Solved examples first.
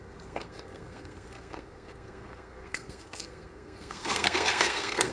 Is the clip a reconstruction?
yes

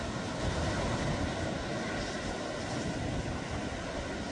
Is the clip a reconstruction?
no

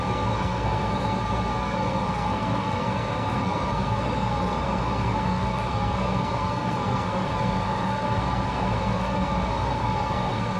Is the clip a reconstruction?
yes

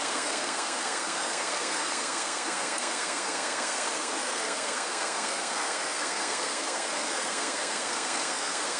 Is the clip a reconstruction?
yes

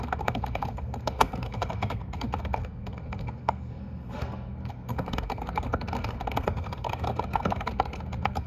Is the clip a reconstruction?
yes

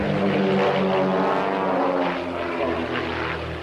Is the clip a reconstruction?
no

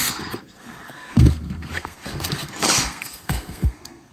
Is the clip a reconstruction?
yes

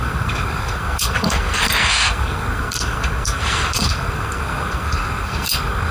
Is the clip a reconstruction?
yes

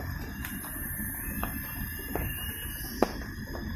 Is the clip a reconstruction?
no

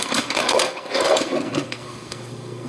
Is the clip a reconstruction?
yes